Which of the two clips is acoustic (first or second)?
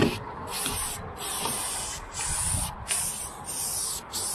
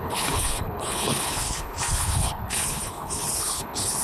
first